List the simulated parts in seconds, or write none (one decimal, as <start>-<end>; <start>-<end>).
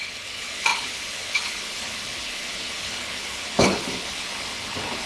0.0-5.1